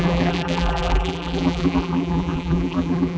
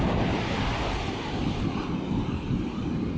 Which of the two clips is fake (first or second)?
first